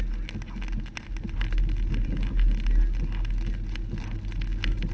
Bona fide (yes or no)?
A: yes